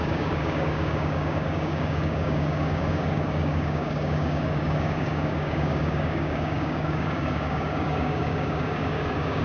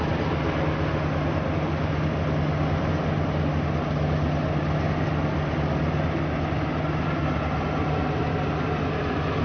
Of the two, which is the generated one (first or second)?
first